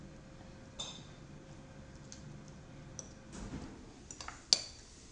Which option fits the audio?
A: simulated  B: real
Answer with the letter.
B